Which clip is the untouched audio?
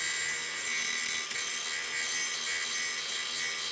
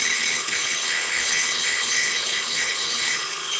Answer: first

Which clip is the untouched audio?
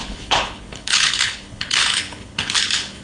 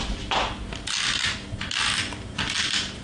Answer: second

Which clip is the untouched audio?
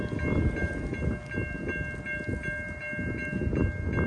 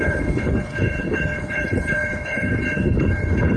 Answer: first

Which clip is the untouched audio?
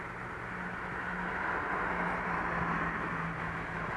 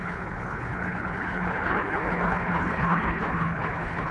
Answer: first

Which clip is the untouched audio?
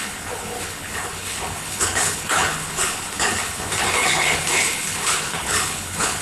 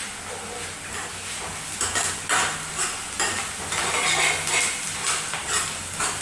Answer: second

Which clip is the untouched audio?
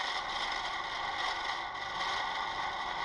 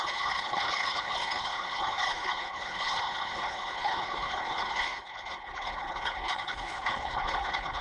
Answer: first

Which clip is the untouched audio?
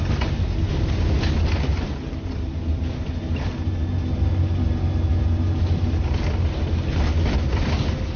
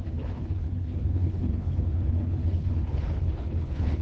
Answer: first